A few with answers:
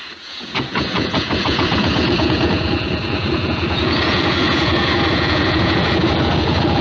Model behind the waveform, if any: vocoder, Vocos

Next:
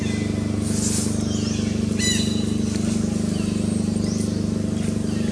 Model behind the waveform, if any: none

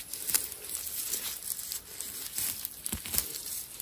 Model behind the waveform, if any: none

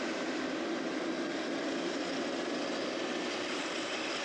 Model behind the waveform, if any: none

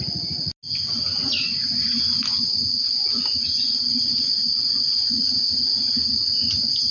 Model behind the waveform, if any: none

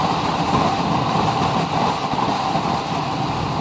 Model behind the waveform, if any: none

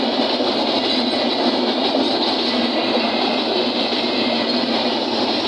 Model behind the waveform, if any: none